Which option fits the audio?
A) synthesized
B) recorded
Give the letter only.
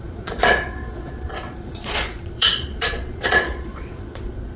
A